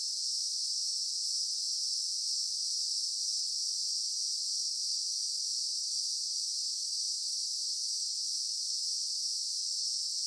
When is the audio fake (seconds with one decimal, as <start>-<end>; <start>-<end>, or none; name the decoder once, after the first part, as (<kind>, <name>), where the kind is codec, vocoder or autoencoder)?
2.8-3.3 (vocoder, BigVGAN v2); 5.6-7.7